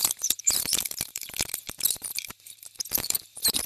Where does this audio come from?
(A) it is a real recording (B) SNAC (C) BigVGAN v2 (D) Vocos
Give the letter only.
C